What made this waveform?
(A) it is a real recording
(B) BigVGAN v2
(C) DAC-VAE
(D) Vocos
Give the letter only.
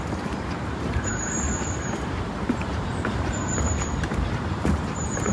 B